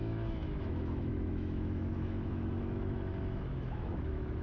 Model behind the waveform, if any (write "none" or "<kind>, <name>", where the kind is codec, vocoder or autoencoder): autoencoder, DAC-VAE